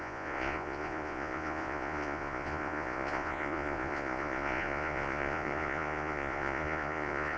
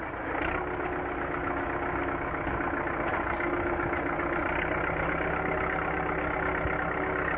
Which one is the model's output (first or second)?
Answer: first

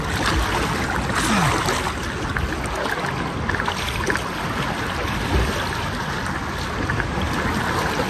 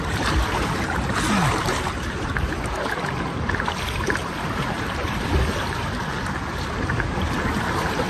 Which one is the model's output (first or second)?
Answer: second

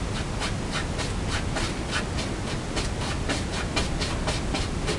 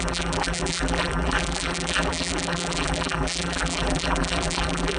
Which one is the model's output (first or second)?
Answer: second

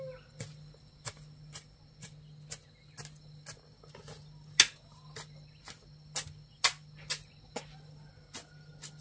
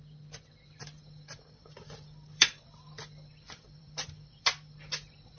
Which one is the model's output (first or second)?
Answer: second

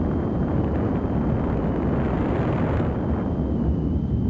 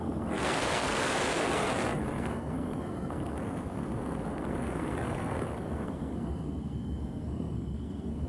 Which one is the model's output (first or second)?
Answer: second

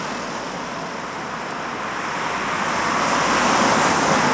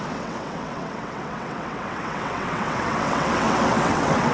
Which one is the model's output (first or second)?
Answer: second